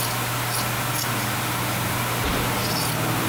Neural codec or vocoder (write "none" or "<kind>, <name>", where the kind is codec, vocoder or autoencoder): none